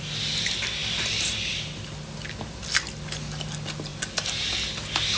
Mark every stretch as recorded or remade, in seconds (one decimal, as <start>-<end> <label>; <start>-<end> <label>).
0.0-5.2 recorded